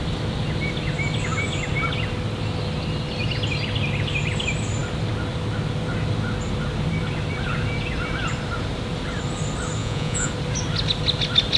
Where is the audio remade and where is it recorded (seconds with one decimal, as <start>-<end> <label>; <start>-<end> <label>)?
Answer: 0.0-9.8 recorded; 9.8-10.3 remade; 10.3-11.6 recorded

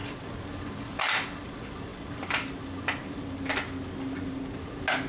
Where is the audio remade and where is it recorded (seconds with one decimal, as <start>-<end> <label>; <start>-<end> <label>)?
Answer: 0.0-5.1 recorded

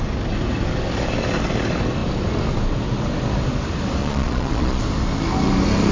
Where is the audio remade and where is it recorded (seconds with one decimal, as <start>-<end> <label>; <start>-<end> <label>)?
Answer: 0.0-4.0 recorded; 4.0-4.8 remade; 4.8-5.9 recorded

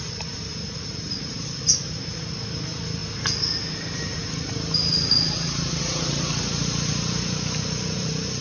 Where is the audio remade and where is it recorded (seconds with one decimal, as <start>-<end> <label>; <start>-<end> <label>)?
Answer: 0.0-8.4 recorded

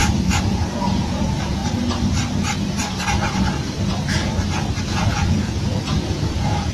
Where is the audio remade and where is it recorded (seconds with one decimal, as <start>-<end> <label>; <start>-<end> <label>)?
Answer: 0.0-0.8 recorded; 0.8-1.6 remade; 1.6-4.8 recorded; 4.8-6.7 remade

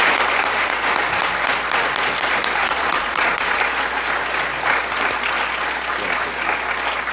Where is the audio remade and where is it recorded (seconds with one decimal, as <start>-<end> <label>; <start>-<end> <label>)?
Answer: 0.0-2.6 recorded; 2.6-3.6 remade; 3.6-7.1 recorded

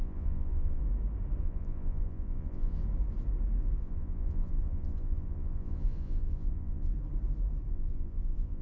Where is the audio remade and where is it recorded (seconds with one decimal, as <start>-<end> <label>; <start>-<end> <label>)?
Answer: 0.0-0.8 remade; 0.8-1.4 recorded; 1.4-2.8 remade; 2.8-3.8 recorded; 3.8-6.9 remade; 6.9-7.7 recorded; 7.7-8.6 remade

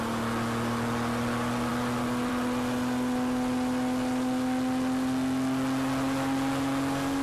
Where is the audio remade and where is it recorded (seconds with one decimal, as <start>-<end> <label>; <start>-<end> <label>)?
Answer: 0.0-7.2 recorded